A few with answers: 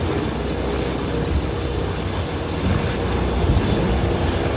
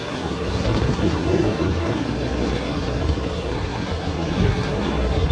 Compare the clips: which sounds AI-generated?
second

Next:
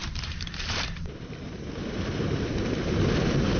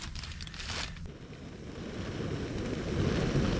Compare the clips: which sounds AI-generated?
first